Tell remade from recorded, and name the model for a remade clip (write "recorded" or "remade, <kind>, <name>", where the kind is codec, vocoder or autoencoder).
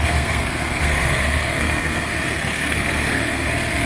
remade, codec, SNAC